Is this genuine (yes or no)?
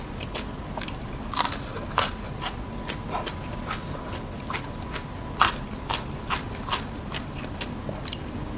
yes